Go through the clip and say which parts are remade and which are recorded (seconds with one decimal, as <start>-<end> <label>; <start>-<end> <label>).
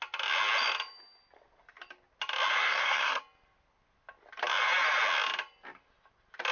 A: 0.0-2.6 recorded; 2.6-3.2 remade; 3.2-6.5 recorded